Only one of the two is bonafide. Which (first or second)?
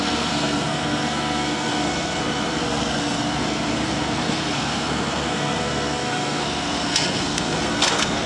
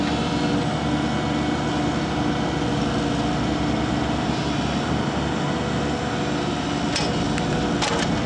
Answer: second